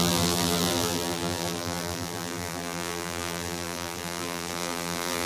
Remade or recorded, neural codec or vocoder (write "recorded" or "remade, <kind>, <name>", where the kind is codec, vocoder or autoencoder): remade, vocoder, BigVGAN v2